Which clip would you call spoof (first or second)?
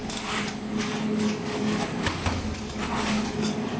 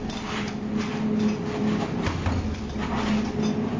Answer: first